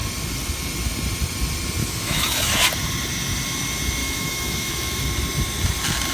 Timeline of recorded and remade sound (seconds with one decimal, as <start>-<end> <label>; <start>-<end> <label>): 0.0-1.8 recorded; 1.8-2.7 remade; 2.7-4.0 recorded; 4.0-5.0 remade; 5.0-6.1 recorded